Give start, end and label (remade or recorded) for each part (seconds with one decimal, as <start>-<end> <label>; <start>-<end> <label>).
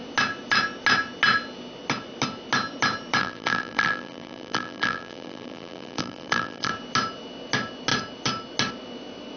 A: 0.0-3.2 recorded; 3.2-6.7 remade; 6.7-9.4 recorded